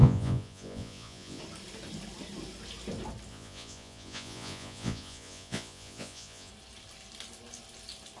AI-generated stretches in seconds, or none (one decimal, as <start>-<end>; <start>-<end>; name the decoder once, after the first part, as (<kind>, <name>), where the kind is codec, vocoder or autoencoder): 0.0-1.4 (vocoder, Vocos); 3.3-6.5